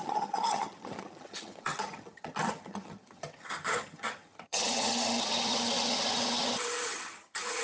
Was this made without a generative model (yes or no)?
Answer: no